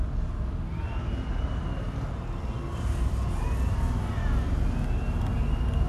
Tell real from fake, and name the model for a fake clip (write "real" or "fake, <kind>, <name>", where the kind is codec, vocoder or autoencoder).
real